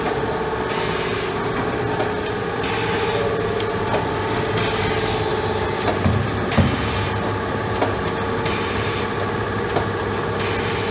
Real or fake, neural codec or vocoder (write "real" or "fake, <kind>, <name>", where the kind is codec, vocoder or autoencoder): real